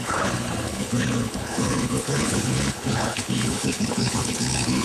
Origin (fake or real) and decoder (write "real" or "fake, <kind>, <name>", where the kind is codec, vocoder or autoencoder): fake, codec, HILCodec